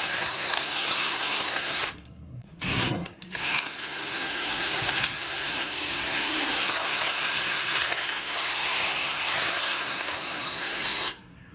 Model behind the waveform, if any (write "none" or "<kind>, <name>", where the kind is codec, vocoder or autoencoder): codec, SNAC